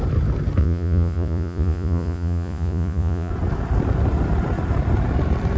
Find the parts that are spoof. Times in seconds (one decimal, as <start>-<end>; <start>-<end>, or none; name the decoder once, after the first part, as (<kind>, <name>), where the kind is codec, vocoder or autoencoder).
0.6-3.3 (vocoder, Vocos)